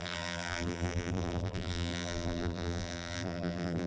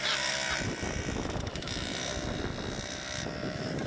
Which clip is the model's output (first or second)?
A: first